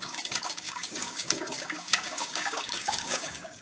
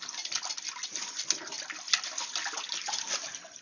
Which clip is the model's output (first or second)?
first